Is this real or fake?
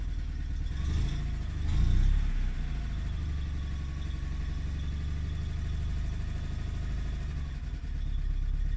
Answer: real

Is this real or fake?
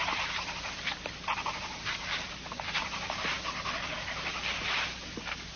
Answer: real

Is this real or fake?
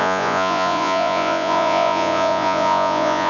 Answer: fake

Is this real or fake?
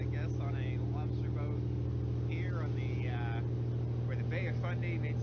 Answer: real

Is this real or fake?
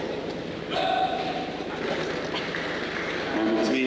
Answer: real